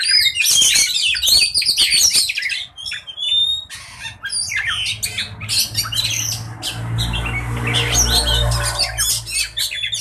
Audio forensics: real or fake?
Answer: real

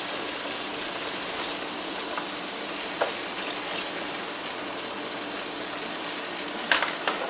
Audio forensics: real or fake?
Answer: real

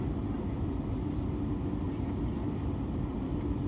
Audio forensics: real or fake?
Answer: real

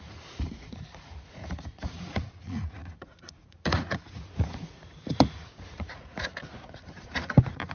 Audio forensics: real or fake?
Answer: fake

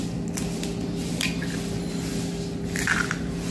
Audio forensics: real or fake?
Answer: real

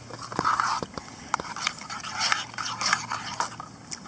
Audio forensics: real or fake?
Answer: real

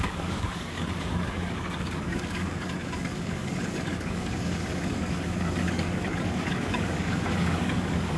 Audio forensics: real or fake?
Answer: fake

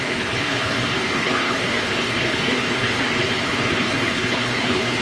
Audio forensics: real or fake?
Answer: fake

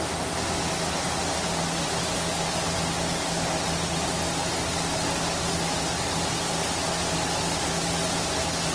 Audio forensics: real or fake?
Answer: real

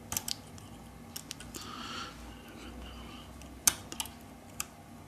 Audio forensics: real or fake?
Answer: real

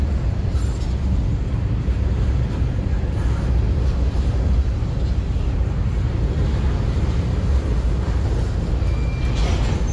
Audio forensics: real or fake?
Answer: real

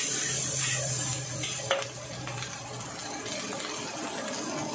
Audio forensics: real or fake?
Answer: real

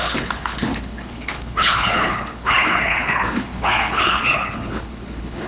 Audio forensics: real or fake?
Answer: fake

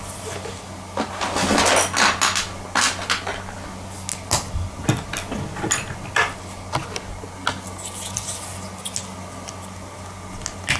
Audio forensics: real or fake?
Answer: real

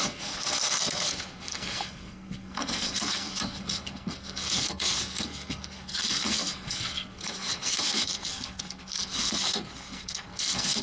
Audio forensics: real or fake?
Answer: fake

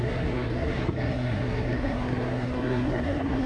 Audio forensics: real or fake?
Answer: fake